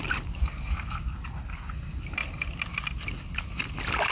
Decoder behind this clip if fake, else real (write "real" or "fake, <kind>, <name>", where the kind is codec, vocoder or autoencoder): real